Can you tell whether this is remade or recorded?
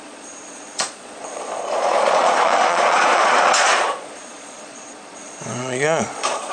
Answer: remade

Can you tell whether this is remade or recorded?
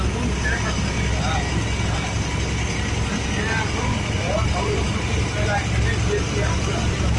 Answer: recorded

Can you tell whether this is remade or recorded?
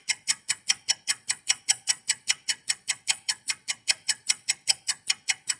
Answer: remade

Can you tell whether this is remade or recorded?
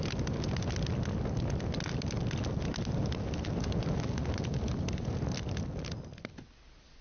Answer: recorded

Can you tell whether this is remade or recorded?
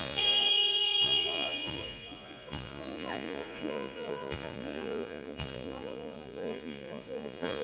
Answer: remade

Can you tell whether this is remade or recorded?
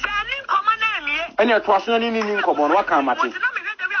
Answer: recorded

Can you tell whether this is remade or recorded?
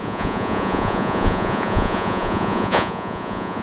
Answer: remade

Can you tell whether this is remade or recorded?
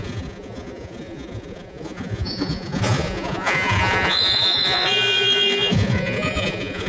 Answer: remade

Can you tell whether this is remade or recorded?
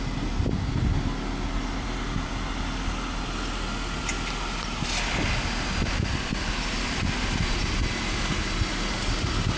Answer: recorded